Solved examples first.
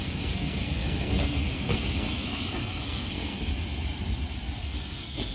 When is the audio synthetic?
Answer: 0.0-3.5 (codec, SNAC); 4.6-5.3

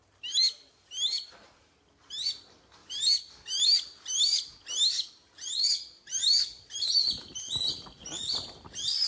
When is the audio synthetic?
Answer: none

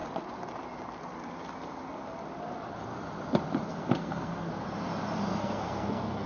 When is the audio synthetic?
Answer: 3.7-4.5 (codec, SNAC); 5.3-6.3

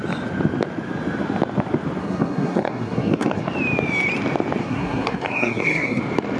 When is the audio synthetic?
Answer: 2.0-3.5 (codec, SNAC); 4.6-6.0